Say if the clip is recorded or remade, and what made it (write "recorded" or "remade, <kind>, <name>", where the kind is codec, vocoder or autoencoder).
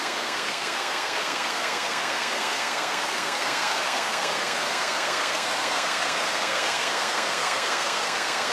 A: remade, codec, SNAC